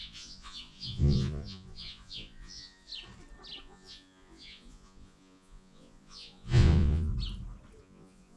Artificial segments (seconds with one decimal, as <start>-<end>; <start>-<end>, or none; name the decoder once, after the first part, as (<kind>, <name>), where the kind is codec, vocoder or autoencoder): 0.0-2.9 (vocoder, Vocos); 3.6-7.1; 7.8-8.4